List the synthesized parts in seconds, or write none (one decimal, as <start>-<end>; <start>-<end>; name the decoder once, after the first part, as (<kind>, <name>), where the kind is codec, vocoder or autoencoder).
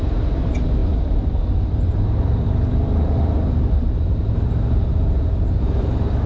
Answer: 0.0-6.3 (vocoder, BigVGAN v2)